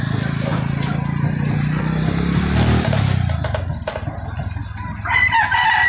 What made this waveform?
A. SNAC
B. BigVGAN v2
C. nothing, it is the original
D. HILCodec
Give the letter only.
C